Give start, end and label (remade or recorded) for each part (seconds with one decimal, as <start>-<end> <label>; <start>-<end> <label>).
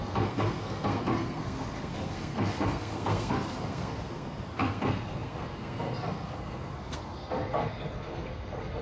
0.0-8.8 remade